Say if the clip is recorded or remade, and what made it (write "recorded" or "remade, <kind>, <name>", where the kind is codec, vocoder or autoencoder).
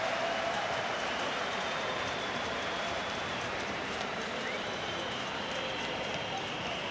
remade, vocoder, BigVGAN v2